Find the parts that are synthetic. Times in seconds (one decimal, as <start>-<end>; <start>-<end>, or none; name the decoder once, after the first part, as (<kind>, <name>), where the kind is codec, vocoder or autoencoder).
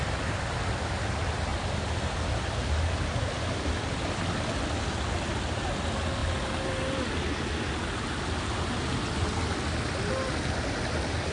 none